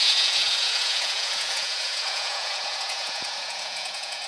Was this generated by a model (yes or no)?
yes